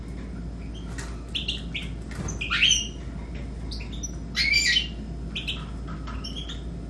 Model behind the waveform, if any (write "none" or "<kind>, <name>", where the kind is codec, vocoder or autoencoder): none